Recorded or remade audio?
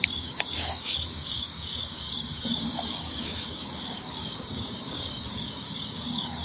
remade